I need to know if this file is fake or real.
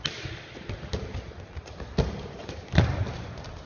real